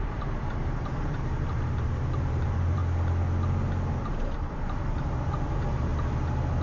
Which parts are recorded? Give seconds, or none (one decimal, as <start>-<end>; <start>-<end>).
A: 2.8-3.9; 5.9-6.6